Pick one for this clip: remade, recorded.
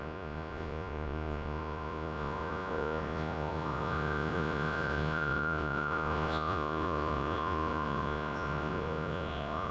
remade